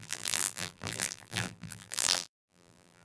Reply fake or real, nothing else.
fake